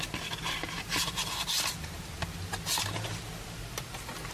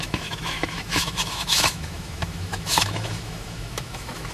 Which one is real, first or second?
first